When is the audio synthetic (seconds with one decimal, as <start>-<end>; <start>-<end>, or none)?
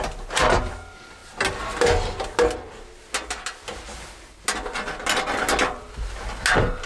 none